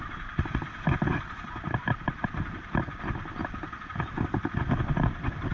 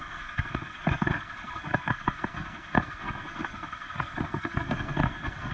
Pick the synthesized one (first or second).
second